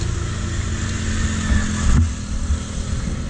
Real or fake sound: real